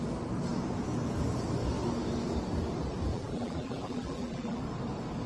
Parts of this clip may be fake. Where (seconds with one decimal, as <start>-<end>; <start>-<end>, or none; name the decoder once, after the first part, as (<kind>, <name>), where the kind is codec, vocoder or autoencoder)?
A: 3.1-4.6 (vocoder, BigVGAN v2)